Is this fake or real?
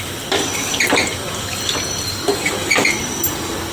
real